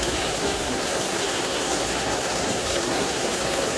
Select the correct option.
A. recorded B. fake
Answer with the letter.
B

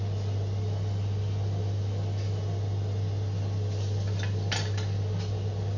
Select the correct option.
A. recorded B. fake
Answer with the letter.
A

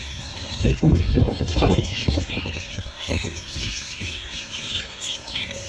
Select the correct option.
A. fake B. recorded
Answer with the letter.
A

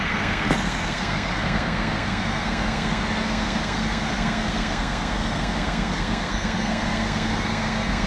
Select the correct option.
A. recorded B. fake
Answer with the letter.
B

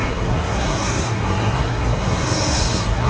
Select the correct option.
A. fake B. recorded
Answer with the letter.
A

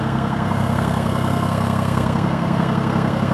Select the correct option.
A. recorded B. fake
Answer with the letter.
B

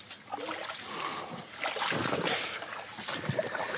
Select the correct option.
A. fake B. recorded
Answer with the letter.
B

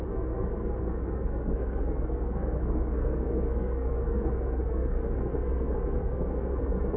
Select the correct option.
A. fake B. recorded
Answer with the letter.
A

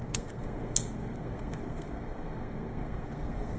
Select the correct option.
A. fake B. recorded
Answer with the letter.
A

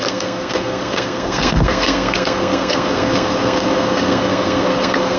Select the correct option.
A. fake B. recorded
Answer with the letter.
A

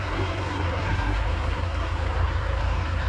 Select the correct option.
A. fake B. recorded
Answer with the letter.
A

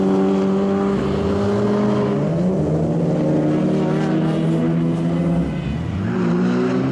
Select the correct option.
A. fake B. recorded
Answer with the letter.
B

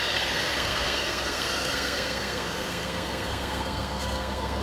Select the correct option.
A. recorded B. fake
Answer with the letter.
B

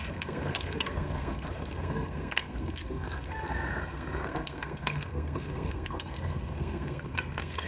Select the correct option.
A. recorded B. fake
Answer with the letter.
B